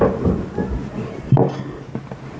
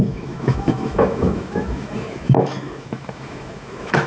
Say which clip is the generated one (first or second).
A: second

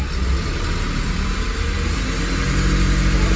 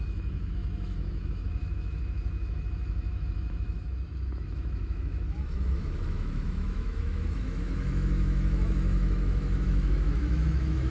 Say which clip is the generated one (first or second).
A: second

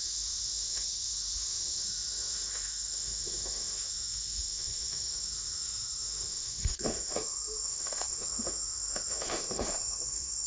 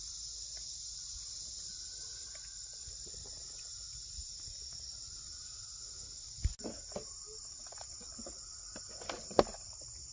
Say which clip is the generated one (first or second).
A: first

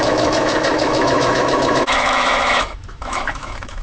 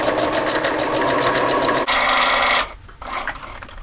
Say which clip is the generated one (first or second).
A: first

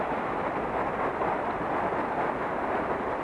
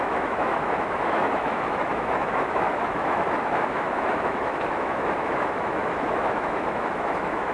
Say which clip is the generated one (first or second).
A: second